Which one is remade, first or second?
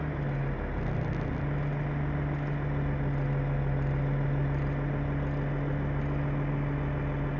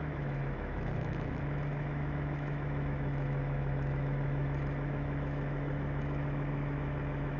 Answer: second